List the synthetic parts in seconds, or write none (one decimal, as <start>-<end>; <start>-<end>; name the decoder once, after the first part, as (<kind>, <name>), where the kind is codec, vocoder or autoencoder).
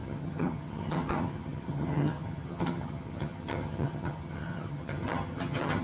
0.0-5.8 (vocoder, HiFi-GAN)